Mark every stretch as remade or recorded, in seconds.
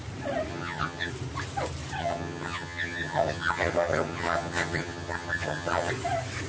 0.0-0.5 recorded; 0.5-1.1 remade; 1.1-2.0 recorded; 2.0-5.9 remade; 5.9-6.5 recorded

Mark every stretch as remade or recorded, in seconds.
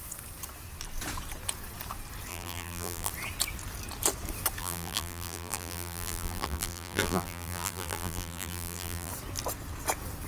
0.0-2.3 recorded; 2.3-3.1 remade; 3.1-4.6 recorded; 4.6-9.1 remade; 9.1-10.3 recorded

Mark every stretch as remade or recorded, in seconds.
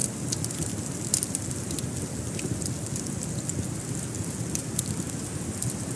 0.0-6.0 recorded